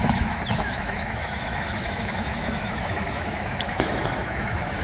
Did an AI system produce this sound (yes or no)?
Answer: yes